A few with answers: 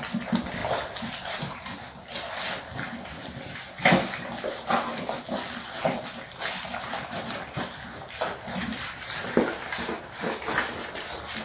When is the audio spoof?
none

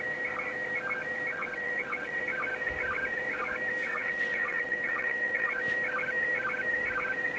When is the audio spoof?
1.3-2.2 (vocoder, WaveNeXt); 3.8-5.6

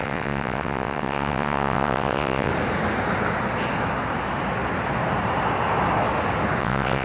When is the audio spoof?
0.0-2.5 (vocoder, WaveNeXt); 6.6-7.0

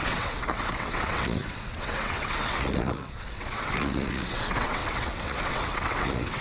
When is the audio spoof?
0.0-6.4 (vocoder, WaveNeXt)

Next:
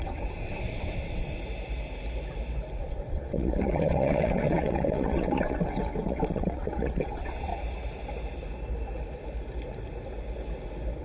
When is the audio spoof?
0.0-1.4 (vocoder, WaveNeXt); 2.8-7.5

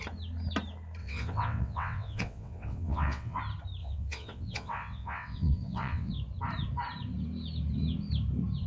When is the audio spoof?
1.0-3.4 (vocoder, WaveNeXt); 3.8-6.1